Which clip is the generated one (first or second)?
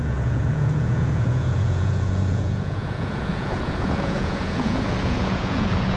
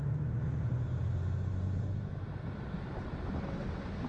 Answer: first